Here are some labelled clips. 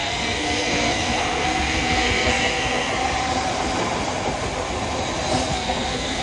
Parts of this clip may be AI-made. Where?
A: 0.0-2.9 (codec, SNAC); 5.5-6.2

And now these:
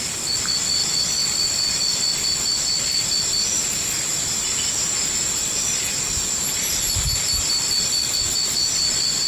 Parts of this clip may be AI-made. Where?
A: 0.8-4.7 (vocoder, BigVGAN v2)

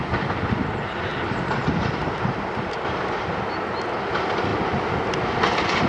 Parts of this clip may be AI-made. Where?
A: 1.1-3.1 (vocoder, BigVGAN v2)

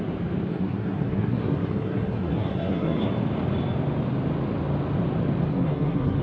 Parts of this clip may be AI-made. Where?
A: 0.5-3.1 (codec, SNAC); 5.5-6.2

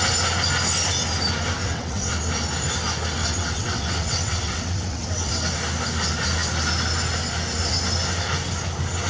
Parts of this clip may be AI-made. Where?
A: 1.6-2.1 (vocoder, WaveNeXt); 3.2-5.3